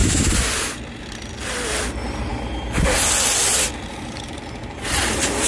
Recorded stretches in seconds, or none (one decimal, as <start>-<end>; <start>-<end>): 0.0-5.5